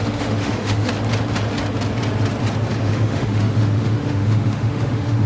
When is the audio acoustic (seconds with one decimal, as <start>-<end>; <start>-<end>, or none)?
0.9-2.8